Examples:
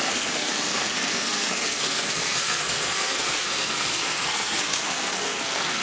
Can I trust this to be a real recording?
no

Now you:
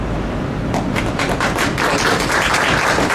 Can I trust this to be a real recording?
yes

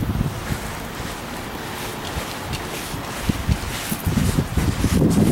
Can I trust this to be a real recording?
yes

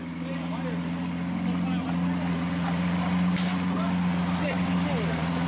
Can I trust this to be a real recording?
yes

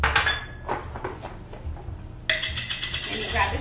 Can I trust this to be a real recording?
yes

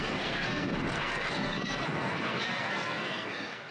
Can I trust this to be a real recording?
no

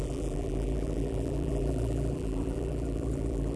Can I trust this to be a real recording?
no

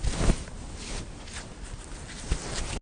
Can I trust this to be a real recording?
yes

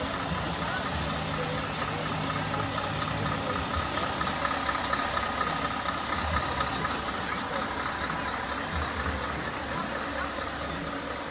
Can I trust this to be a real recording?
yes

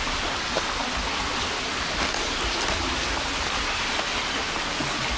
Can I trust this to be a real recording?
yes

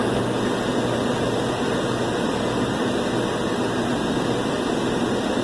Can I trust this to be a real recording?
yes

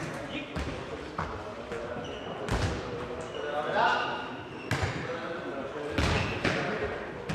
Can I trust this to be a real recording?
yes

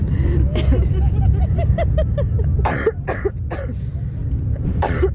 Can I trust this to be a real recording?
yes